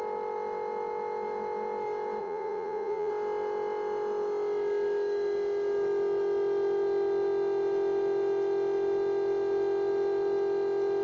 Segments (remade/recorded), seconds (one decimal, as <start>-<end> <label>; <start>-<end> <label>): 0.0-2.2 recorded; 2.2-3.1 remade; 3.1-11.0 recorded

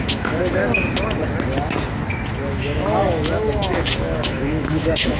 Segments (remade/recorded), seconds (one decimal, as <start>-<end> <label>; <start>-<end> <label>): 0.0-0.6 remade; 0.6-2.5 recorded; 2.5-5.2 remade